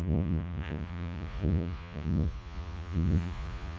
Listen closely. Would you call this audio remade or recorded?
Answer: remade